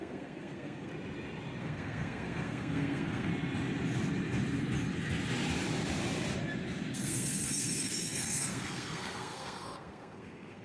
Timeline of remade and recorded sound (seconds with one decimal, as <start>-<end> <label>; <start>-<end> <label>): 0.0-0.9 remade; 0.9-1.6 recorded; 1.6-3.3 remade; 3.3-6.9 recorded; 6.9-10.6 remade